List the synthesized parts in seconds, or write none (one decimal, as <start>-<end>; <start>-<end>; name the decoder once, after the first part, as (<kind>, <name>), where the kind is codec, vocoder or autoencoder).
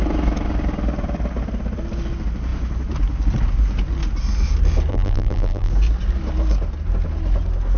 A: 4.9-5.7 (vocoder, BigVGAN v2)